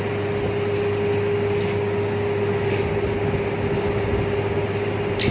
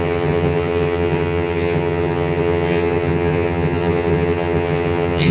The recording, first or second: first